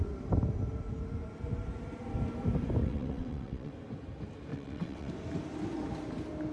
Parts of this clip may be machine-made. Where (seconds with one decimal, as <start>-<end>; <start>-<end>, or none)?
2.8-3.7; 4.5-5.1